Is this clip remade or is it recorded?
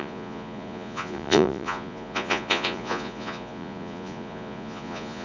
remade